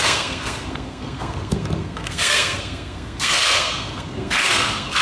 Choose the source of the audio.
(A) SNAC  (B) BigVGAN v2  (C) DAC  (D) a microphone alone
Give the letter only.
A